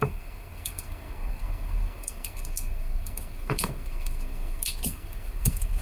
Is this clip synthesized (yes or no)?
yes